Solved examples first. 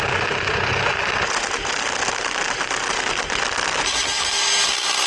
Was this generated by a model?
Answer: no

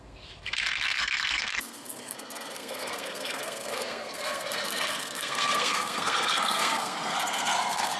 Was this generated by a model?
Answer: yes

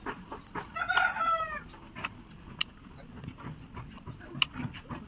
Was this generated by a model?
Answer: no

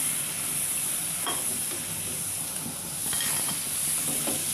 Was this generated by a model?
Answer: no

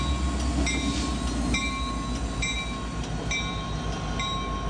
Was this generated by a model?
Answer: no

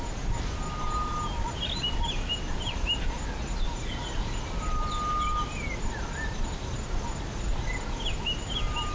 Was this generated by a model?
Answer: no